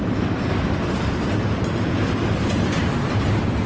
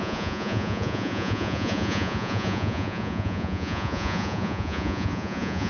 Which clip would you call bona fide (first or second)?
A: first